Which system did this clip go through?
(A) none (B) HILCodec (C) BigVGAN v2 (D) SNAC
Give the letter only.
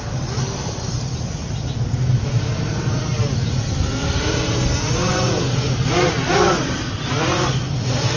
A